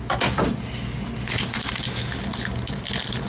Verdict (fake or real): real